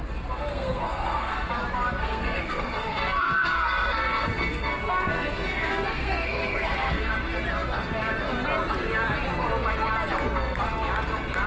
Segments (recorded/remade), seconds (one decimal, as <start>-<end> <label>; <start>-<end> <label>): 0.0-0.5 recorded; 0.5-1.5 remade; 1.5-2.0 recorded; 2.0-7.1 remade; 7.1-11.5 recorded